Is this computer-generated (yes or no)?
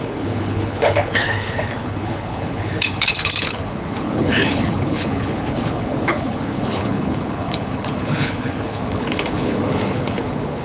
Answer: yes